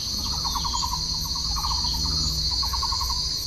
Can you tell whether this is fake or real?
real